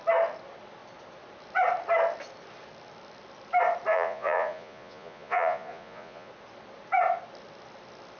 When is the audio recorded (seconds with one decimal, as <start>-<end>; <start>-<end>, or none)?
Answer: 0.0-3.9; 6.3-8.2